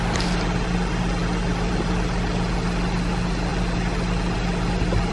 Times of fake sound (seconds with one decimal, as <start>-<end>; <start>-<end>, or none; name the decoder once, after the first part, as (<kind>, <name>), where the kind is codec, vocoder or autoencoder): none